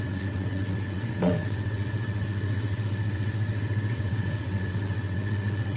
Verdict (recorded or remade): remade